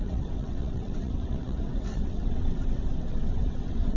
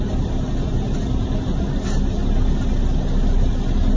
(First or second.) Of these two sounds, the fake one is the first